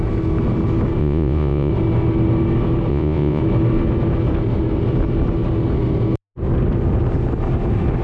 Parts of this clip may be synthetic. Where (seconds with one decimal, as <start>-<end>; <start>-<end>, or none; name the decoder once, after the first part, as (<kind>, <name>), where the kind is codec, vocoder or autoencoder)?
1.0-1.7 (vocoder, Vocos); 2.9-3.4